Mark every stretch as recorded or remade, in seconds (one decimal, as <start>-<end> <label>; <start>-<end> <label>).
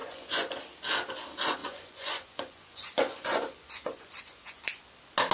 0.0-0.6 remade; 0.6-1.6 recorded; 1.6-4.8 remade; 4.8-5.3 recorded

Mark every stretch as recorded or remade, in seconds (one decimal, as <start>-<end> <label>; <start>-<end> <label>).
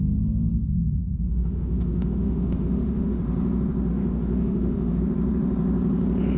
0.0-1.0 recorded; 1.0-3.2 remade; 3.2-3.9 recorded; 3.9-5.0 remade; 5.0-6.4 recorded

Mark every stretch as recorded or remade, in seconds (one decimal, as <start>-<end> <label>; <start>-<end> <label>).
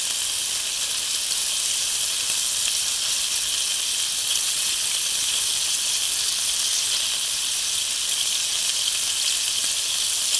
0.0-10.4 recorded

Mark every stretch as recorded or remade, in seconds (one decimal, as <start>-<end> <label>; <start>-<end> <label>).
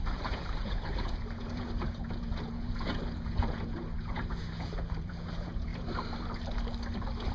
0.0-5.7 remade; 5.7-7.3 recorded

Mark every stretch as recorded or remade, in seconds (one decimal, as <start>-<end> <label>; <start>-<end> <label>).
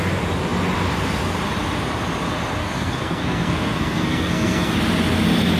0.0-2.6 recorded; 2.6-4.7 remade; 4.7-5.6 recorded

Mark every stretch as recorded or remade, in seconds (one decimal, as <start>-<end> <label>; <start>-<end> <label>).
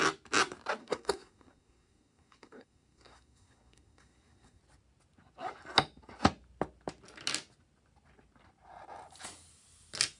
0.0-0.8 recorded; 0.8-4.6 remade; 4.6-10.2 recorded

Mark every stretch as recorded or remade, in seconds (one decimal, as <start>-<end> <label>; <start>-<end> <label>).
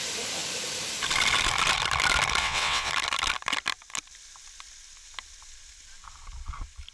0.0-2.4 recorded; 2.4-2.9 remade; 2.9-6.9 recorded